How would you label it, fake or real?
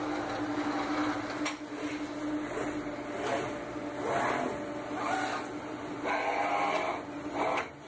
real